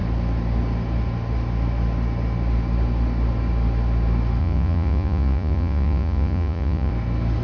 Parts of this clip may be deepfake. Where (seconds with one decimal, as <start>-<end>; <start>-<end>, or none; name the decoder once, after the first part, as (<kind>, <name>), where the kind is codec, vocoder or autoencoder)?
4.4-6.9 (vocoder, Vocos)